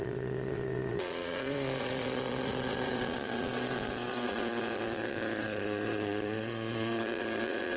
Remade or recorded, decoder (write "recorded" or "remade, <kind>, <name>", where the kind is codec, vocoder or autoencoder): remade, vocoder, Vocos